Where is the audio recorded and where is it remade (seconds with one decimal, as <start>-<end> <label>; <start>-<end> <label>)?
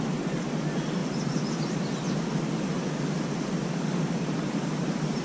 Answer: 0.0-3.7 recorded; 3.7-4.2 remade; 4.2-5.2 recorded